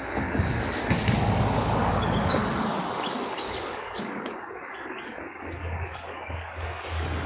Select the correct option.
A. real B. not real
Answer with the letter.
B